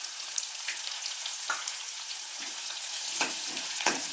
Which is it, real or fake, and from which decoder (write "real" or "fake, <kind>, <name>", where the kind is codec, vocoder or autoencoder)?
fake, vocoder, Vocos